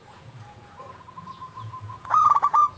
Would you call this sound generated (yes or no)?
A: yes